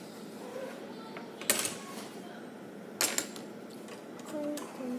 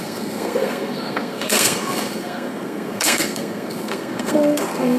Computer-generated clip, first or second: second